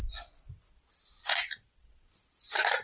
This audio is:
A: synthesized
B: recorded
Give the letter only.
A